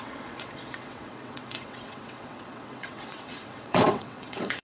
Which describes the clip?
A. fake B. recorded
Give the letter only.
A